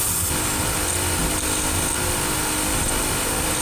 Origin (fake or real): real